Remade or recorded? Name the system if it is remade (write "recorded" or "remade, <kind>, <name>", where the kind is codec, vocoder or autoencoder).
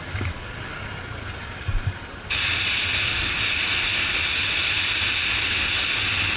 recorded